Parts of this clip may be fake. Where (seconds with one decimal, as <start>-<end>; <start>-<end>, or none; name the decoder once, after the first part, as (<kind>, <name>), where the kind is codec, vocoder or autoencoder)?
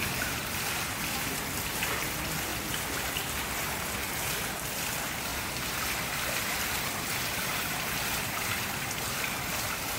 5.3-5.8 (vocoder, BigVGAN v2)